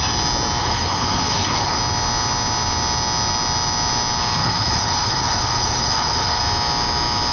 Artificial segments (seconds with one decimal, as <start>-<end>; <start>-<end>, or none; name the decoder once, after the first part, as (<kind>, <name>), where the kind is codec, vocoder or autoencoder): 0.6-1.8 (codec, HILCodec); 4.4-6.4